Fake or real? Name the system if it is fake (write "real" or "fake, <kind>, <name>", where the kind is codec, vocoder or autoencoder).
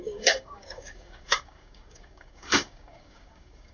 fake, codec, DAC